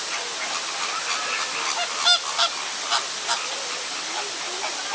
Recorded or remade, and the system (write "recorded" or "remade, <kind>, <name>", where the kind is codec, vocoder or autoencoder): recorded